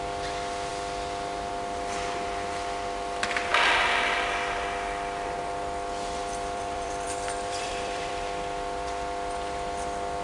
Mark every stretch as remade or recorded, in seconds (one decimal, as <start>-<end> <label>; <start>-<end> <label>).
0.0-6.2 recorded; 6.2-8.1 remade; 8.1-10.2 recorded